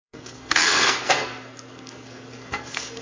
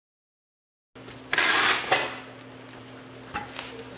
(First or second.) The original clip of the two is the second